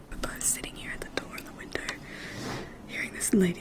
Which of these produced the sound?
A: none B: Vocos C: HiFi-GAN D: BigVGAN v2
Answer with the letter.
A